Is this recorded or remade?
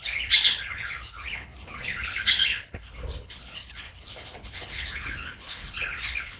remade